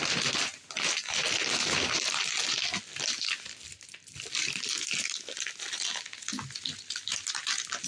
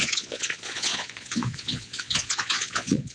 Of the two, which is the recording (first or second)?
first